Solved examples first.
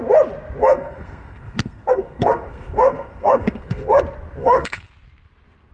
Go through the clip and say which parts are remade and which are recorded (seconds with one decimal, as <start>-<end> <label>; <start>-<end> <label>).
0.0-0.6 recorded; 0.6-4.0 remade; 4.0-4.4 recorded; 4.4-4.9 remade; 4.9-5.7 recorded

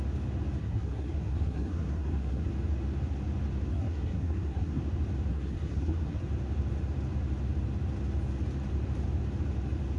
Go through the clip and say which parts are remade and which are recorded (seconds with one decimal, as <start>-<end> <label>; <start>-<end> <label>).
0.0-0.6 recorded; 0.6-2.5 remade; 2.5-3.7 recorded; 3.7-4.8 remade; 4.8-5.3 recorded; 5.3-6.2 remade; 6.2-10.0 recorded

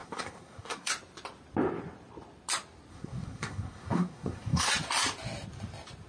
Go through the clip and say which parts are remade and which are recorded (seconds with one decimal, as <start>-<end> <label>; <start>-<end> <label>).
0.0-0.9 remade; 0.9-2.9 recorded; 2.9-4.7 remade; 4.7-6.1 recorded

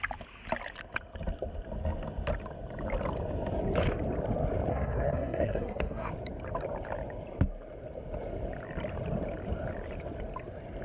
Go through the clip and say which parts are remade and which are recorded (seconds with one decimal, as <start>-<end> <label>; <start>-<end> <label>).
0.0-4.7 recorded; 4.7-6.1 remade; 6.1-10.8 recorded